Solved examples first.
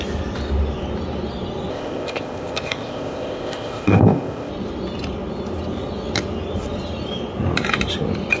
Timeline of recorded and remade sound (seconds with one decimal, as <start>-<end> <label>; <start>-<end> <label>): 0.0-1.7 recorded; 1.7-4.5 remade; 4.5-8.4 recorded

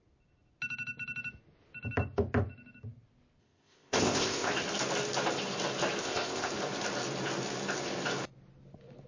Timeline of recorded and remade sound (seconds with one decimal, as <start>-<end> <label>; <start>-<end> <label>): 0.0-3.4 recorded; 3.4-4.5 remade; 4.5-6.0 recorded; 6.0-6.5 remade; 6.5-9.1 recorded

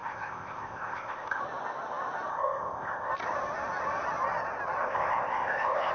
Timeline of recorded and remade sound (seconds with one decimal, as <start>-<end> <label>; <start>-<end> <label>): 0.0-1.4 remade; 1.4-2.3 recorded; 2.3-3.1 remade; 3.1-4.8 recorded; 4.8-5.9 remade